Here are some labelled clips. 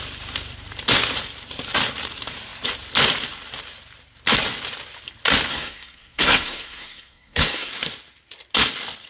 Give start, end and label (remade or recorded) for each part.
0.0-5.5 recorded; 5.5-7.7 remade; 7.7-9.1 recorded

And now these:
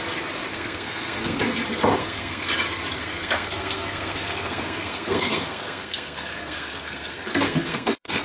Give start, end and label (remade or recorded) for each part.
0.0-0.5 recorded; 0.5-1.4 remade; 1.4-2.0 recorded; 2.0-2.5 remade; 2.5-3.0 recorded; 3.0-8.2 remade

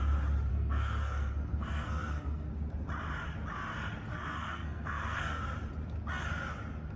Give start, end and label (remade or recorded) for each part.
0.0-0.5 recorded; 0.5-2.5 remade; 2.5-4.1 recorded; 4.1-5.4 remade; 5.4-7.0 recorded